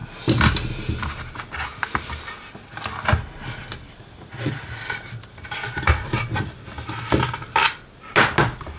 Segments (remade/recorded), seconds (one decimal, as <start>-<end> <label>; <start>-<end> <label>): 0.0-8.8 recorded